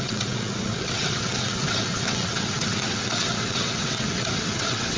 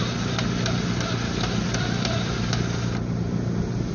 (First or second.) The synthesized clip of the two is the first